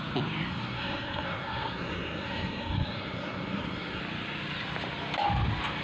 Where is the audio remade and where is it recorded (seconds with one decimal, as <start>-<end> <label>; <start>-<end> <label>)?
0.0-0.5 recorded; 0.5-4.0 remade; 4.0-5.8 recorded